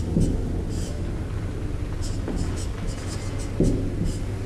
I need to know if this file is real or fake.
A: real